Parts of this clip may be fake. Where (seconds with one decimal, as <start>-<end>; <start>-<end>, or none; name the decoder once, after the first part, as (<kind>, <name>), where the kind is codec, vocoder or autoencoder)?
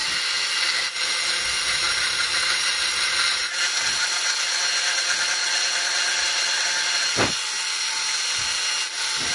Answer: none